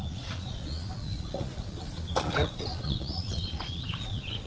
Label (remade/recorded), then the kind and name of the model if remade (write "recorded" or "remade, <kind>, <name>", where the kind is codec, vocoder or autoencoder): remade, vocoder, Vocos